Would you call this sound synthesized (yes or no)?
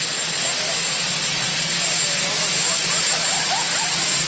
no